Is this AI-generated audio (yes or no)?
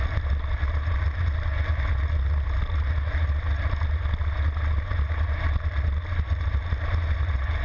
no